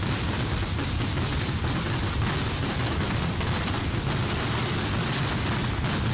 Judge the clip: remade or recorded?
recorded